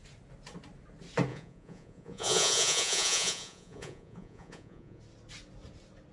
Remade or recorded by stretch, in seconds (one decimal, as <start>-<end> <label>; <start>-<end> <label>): 0.0-1.3 recorded; 1.3-5.0 remade; 5.0-6.1 recorded